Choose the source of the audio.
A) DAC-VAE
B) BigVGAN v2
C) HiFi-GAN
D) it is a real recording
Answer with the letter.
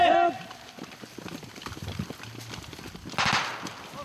D